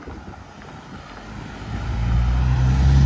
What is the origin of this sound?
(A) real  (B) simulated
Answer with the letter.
A